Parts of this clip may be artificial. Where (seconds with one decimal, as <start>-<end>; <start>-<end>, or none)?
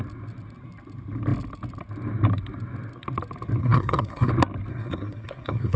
3.6-4.3; 4.7-5.8